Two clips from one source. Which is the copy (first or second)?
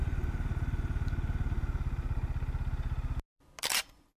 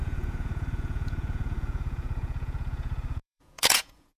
second